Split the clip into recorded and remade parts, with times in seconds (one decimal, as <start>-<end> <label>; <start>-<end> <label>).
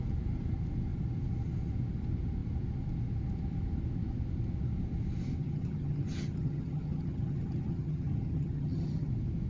0.0-5.4 recorded; 5.4-9.1 remade; 9.1-9.5 recorded